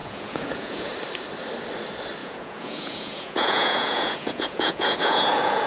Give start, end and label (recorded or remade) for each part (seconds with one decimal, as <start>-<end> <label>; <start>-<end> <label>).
0.0-0.9 remade; 0.9-2.2 recorded; 2.2-5.7 remade